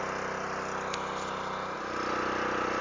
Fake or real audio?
real